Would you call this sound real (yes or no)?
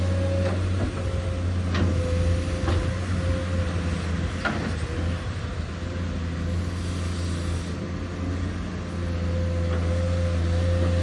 yes